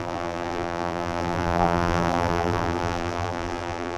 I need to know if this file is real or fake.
fake